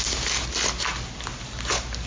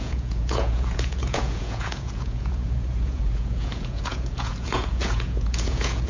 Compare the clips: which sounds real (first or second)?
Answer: first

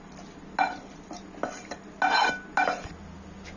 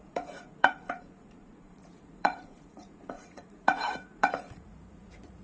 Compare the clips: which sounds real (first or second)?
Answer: first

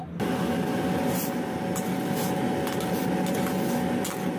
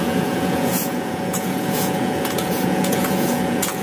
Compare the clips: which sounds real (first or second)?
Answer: first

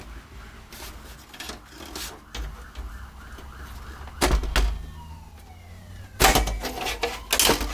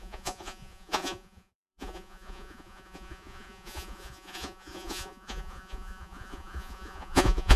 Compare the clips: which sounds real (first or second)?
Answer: first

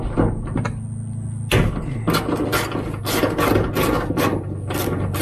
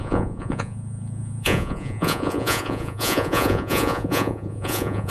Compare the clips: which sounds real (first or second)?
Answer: first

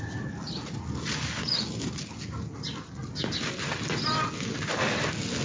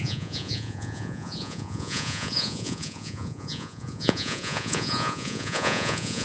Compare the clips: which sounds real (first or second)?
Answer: first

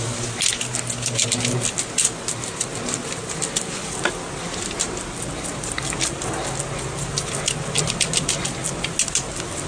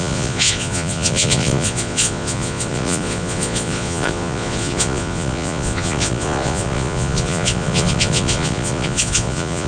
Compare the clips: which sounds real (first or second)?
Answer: first